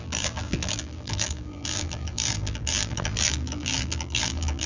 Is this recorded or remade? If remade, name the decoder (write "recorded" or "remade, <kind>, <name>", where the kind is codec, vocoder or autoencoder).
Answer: remade, vocoder, BigVGAN v2